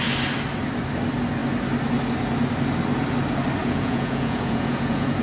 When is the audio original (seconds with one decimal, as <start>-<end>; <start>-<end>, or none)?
0.0-3.6